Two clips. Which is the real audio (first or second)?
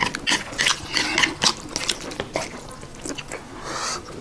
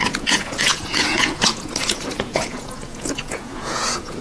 first